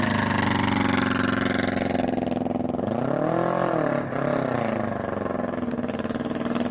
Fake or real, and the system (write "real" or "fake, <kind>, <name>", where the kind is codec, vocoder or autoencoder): real